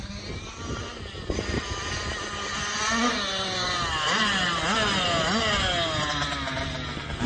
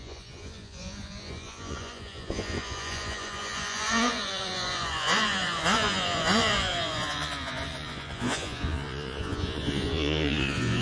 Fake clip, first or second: second